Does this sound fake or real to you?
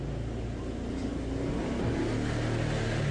real